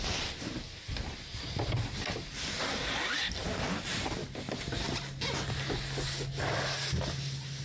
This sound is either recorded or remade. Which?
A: recorded